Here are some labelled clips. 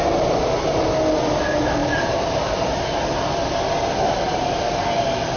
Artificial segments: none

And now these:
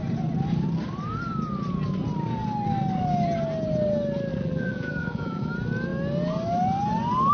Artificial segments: 4.3-5.5 (vocoder, BigVGAN v2)

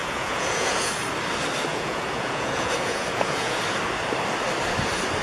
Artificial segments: 0.0-0.9 (vocoder, Vocos); 1.7-3.6